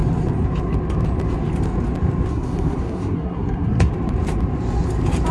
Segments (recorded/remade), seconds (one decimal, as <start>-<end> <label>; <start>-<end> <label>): 0.0-2.3 recorded; 2.3-3.9 remade; 3.9-5.3 recorded